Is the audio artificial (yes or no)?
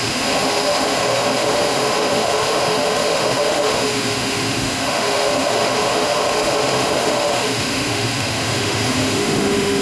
yes